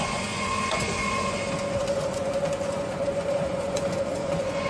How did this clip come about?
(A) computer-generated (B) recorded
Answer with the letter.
A